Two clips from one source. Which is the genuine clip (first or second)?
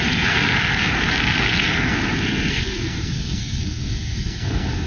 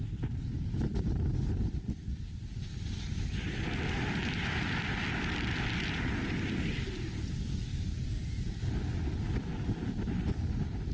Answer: second